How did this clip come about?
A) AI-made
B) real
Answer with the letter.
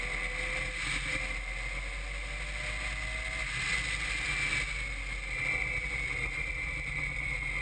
B